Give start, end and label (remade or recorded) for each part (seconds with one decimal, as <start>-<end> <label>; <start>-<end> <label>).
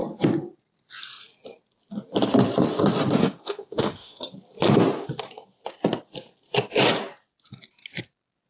0.0-3.2 recorded; 3.2-4.2 remade; 4.2-8.5 recorded